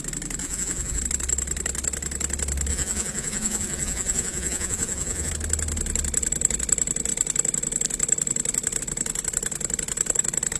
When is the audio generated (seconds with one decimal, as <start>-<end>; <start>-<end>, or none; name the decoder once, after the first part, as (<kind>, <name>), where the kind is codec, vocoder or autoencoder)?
0.4-1.0 (vocoder, Vocos); 2.7-5.3